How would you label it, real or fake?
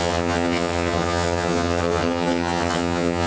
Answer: fake